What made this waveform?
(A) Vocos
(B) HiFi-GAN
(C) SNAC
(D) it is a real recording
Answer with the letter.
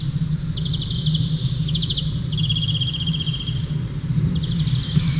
D